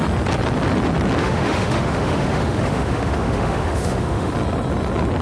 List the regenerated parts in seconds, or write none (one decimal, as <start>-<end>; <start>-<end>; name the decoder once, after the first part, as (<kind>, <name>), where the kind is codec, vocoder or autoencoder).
1.2-4.3 (autoencoder, DAC-VAE)